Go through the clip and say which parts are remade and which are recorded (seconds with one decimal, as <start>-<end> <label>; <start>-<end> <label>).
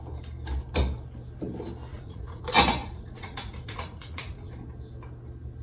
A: 0.0-1.9 recorded; 1.9-2.4 remade; 2.4-2.8 recorded; 2.8-4.5 remade; 4.5-5.6 recorded